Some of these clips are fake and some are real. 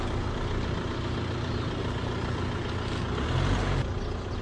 real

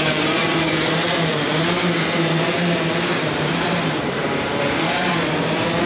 fake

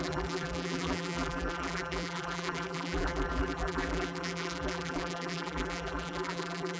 fake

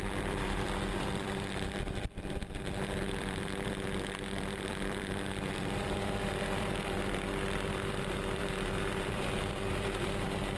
fake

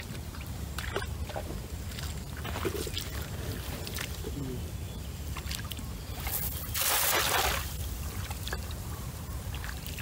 real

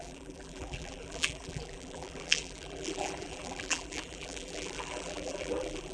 fake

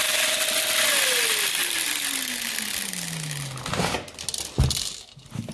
real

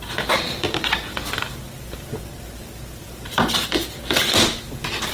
fake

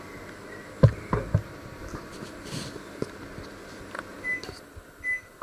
real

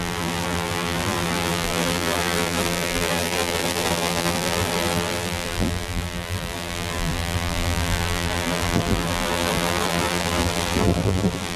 fake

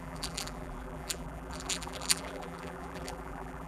fake